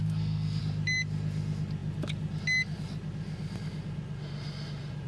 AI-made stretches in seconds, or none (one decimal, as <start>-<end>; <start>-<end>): 0.0-0.6